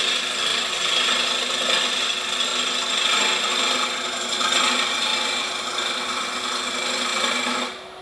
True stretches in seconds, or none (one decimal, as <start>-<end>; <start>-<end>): 0.0-0.5; 1.6-8.0